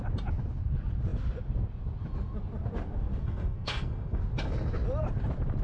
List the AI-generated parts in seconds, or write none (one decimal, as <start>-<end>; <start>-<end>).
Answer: 3.2-4.2